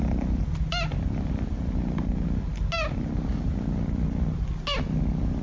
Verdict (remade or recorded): recorded